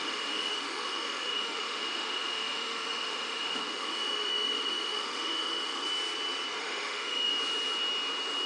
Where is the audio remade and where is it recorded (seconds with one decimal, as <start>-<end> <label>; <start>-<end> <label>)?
0.0-5.8 remade; 5.8-6.6 recorded; 6.6-7.3 remade; 7.3-8.5 recorded

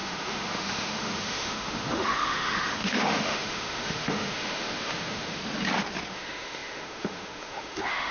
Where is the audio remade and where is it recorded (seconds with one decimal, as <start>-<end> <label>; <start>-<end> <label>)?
0.0-5.4 remade; 5.4-6.1 recorded; 6.1-8.1 remade

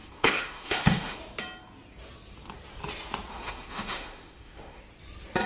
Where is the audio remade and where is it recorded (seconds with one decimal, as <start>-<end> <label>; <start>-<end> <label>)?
0.0-1.2 remade; 1.2-3.3 recorded; 3.3-4.8 remade; 4.8-5.5 recorded